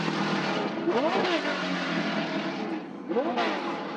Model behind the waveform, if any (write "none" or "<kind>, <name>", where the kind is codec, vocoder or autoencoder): none